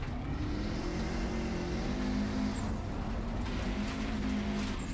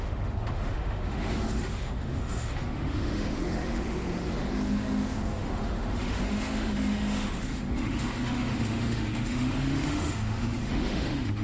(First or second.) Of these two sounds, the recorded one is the first